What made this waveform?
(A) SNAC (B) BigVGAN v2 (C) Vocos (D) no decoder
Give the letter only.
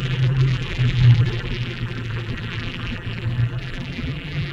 B